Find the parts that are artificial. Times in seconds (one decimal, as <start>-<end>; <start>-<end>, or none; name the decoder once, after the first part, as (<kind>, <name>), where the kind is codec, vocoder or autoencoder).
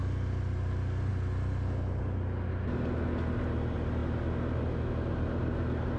none